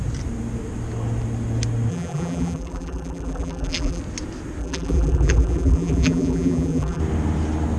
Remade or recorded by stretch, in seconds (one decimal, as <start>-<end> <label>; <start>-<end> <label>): 0.0-1.9 recorded; 1.9-4.0 remade; 4.0-4.6 recorded; 4.6-7.0 remade; 7.0-7.8 recorded